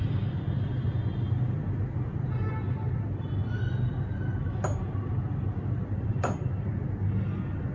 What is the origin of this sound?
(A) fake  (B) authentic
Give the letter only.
B